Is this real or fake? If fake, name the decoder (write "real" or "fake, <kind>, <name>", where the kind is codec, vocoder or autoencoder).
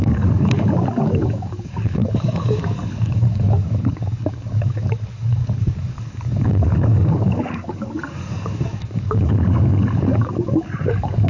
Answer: fake, codec, DAC